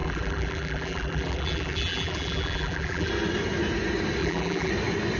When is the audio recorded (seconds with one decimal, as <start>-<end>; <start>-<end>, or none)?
3.1-4.2; 4.7-5.2